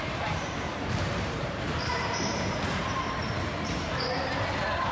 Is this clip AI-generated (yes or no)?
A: yes